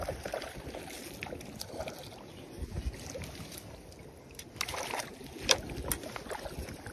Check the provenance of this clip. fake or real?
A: real